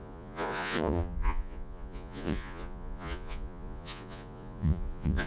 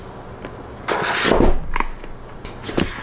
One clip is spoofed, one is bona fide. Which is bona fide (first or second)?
second